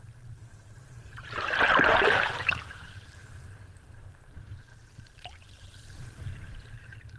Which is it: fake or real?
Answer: fake